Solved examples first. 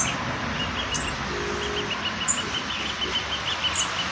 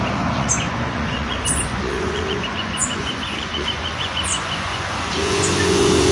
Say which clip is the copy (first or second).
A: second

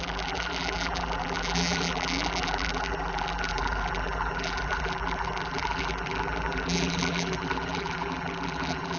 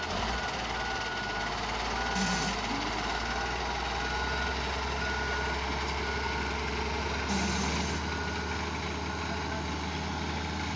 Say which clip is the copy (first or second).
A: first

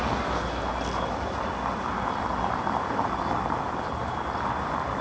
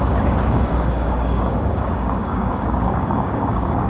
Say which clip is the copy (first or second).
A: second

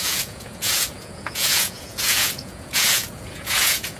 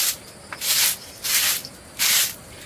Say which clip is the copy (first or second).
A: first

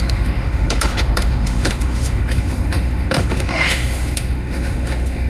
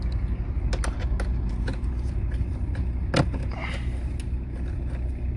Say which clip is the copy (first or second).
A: first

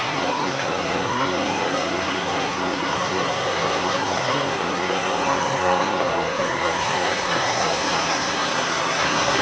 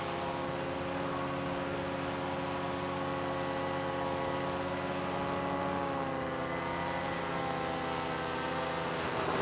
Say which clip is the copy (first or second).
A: first